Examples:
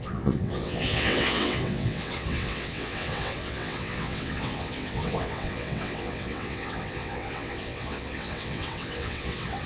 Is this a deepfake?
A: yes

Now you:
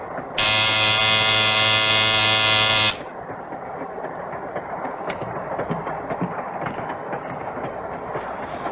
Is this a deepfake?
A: no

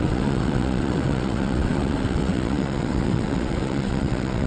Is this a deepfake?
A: yes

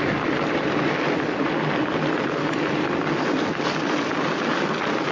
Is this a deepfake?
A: no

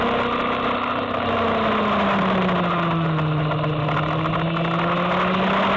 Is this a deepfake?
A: no